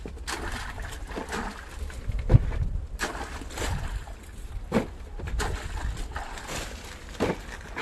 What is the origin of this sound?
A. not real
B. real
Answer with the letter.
B